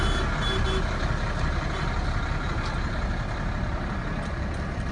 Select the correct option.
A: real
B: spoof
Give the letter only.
A